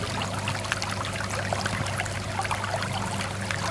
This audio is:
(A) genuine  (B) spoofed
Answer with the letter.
A